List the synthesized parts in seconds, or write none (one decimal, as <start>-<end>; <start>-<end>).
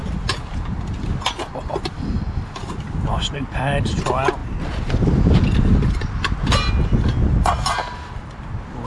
none